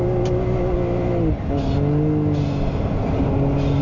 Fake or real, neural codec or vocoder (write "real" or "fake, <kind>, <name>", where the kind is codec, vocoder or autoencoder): real